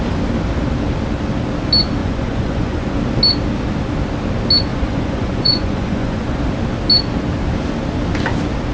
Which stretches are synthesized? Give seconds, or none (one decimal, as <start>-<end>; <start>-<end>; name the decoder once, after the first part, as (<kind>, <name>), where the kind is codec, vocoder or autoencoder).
2.0-3.0 (vocoder, Vocos); 4.7-6.4